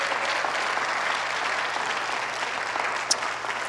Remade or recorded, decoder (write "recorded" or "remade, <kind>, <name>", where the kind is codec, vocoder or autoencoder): recorded